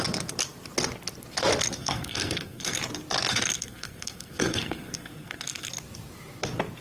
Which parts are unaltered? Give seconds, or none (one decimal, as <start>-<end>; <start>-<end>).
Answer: 0.0-1.8; 2.8-3.3; 5.7-6.8